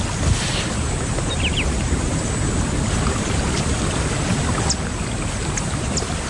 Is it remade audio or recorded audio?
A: recorded